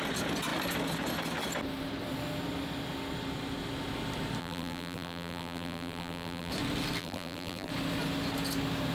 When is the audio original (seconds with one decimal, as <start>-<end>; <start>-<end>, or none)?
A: 0.0-4.4; 6.5-7.0; 7.7-8.9